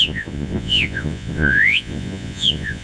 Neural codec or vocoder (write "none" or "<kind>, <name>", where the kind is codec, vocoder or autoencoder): vocoder, Vocos